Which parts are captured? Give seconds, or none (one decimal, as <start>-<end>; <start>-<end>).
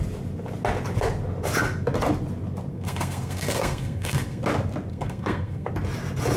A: 0.0-2.7; 4.4-4.9; 5.7-6.4